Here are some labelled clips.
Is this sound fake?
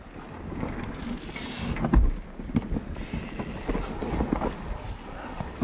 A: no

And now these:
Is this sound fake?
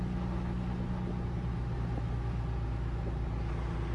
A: no